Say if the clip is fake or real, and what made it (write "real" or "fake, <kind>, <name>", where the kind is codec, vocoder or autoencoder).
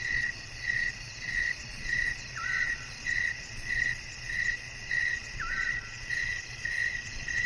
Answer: fake, vocoder, Vocos